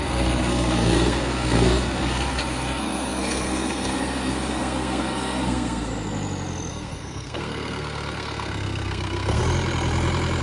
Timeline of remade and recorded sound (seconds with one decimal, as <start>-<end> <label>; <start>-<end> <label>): 0.0-5.9 remade; 5.9-6.7 recorded; 6.7-9.4 remade; 9.4-10.4 recorded